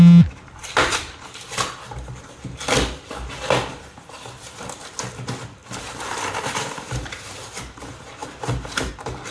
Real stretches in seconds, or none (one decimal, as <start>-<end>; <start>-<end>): 0.0-0.6; 4.3-5.6; 6.4-8.2; 8.9-9.3

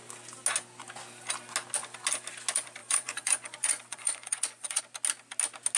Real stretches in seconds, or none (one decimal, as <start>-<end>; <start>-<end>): 0.0-2.8; 4.8-5.8

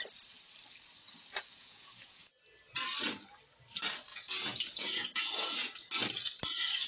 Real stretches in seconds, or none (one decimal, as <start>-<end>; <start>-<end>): 0.0-1.5; 2.3-4.1; 5.9-6.9

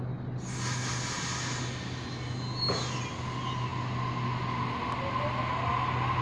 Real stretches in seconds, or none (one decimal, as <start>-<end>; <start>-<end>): 0.0-6.2

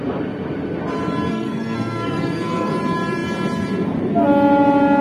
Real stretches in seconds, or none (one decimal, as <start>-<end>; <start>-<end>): 0.0-1.3; 2.7-5.0

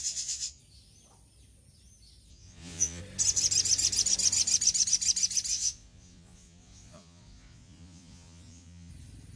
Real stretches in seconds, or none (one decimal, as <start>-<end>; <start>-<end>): 0.6-2.3; 3.0-5.5; 8.9-9.4